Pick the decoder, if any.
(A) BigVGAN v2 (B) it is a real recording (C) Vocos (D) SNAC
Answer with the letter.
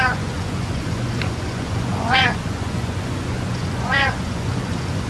C